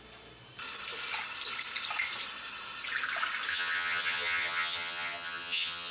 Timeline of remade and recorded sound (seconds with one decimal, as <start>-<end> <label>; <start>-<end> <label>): 0.0-3.5 recorded; 3.5-5.9 remade